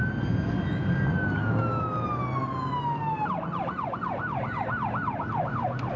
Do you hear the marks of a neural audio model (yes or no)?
no